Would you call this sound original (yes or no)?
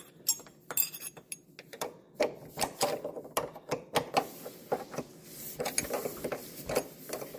yes